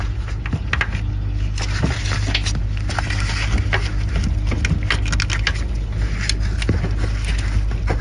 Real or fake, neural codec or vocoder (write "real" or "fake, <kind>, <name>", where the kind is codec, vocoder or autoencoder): real